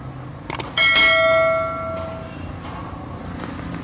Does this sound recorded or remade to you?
recorded